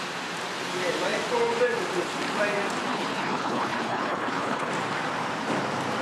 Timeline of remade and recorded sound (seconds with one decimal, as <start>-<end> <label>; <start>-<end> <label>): 0.0-2.9 recorded; 2.9-4.7 remade; 4.7-6.0 recorded